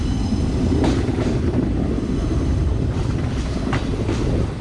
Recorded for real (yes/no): no